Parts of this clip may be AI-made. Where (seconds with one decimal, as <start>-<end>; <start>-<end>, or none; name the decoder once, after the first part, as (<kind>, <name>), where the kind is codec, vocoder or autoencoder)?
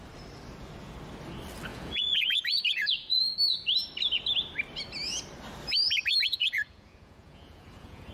1.7-3.2 (vocoder, Vocos); 6.4-8.1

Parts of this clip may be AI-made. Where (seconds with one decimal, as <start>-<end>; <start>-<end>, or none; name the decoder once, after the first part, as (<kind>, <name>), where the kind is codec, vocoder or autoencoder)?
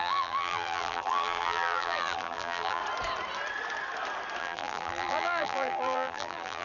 0.0-2.8 (vocoder, BigVGAN v2); 4.4-6.6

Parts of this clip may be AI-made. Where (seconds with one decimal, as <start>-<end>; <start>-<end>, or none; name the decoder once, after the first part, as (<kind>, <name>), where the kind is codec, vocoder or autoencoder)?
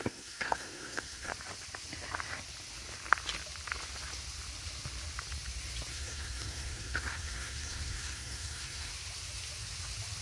0.0-1.3 (codec, SNAC); 5.9-8.9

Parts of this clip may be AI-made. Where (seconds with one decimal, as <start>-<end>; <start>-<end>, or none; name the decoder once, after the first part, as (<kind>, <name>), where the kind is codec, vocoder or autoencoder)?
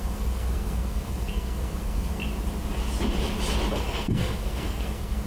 0.0-2.2 (codec, SNAC); 3.7-5.3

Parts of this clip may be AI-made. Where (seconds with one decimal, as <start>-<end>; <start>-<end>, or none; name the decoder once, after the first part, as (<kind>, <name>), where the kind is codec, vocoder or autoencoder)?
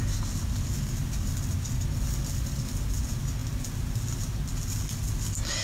none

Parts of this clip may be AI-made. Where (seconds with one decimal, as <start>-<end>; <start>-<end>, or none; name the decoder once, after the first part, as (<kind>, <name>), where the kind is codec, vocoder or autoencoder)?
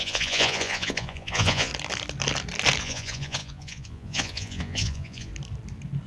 0.0-1.7 (vocoder, Vocos); 2.8-5.3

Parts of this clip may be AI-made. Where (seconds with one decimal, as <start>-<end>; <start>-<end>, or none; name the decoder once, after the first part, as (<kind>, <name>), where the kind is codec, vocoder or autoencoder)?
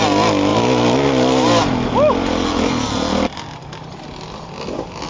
none